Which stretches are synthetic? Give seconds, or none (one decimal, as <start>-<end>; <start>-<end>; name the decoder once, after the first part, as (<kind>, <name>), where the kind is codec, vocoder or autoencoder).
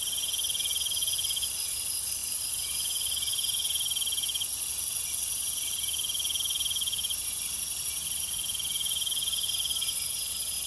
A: none